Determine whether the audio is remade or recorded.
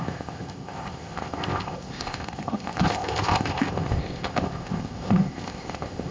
remade